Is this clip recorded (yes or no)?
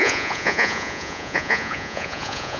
no